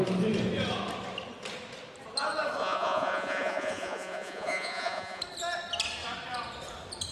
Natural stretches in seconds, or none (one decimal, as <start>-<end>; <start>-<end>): 0.0-2.6; 5.2-7.1

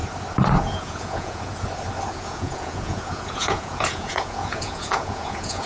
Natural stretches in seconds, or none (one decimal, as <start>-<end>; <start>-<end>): 0.0-0.6; 1.5-2.1

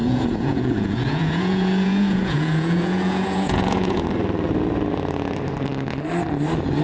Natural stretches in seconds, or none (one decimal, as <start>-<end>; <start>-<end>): 4.0-6.8

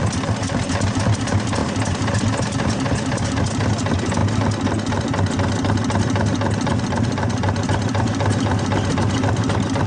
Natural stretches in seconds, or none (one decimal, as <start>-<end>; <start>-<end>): 0.0-9.9

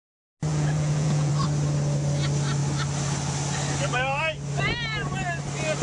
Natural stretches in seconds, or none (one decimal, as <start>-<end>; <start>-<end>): 0.0-0.5; 1.3-5.8

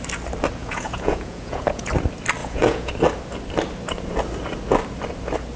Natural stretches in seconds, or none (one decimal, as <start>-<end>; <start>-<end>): 0.0-0.6; 1.9-2.4; 2.9-5.6

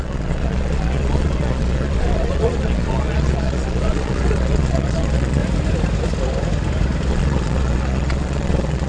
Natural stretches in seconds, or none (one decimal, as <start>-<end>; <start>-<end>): 5.4-7.1